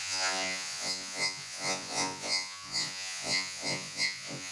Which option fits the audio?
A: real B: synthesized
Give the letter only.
B